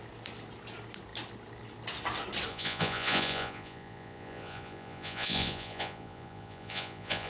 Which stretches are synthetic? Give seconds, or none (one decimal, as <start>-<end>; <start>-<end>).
2.5-7.3